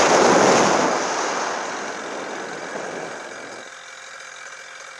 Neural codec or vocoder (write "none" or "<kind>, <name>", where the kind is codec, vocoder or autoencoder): none